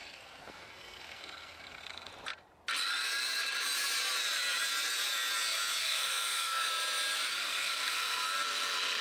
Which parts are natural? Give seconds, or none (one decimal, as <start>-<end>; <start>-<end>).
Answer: 2.1-5.8; 6.7-7.3; 8.2-9.0